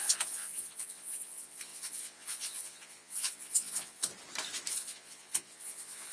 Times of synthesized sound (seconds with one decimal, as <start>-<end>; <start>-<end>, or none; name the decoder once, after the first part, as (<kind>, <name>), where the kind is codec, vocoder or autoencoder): 0.0-4.1 (vocoder, Vocos); 4.7-6.1